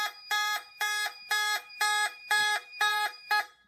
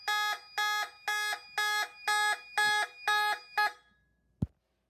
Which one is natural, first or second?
second